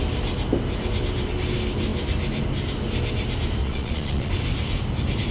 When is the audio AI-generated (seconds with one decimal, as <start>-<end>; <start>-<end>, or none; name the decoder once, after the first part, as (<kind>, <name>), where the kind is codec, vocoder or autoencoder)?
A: 3.6-4.3 (vocoder, Vocos)